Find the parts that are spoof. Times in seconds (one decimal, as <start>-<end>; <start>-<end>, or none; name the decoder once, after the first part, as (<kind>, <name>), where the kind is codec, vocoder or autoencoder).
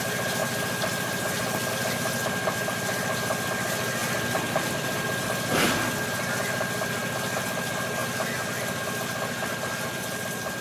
none